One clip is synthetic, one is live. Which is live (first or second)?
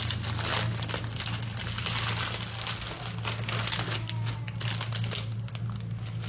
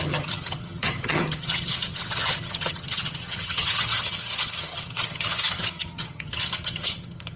first